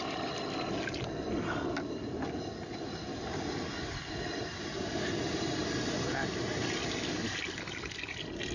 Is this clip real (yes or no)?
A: yes